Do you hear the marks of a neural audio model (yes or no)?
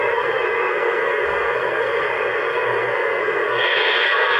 yes